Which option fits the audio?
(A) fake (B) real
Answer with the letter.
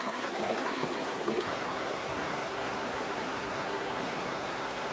A